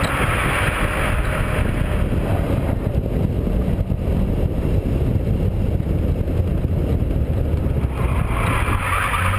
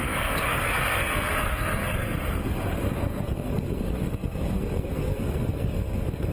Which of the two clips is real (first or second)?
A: first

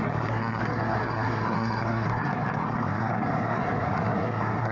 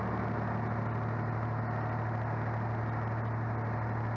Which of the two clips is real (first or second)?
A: second